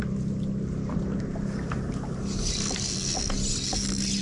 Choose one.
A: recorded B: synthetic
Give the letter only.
A